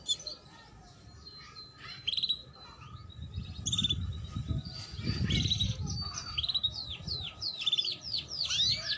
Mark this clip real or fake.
real